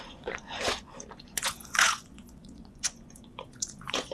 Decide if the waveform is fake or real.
fake